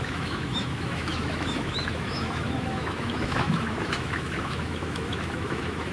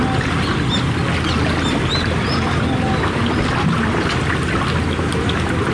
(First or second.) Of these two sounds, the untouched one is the second